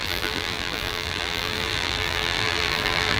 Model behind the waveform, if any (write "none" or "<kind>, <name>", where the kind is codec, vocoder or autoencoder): vocoder, BigVGAN v2